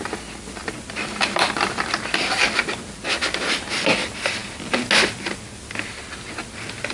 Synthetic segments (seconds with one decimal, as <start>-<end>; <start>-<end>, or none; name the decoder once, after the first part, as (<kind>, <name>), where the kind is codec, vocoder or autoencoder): none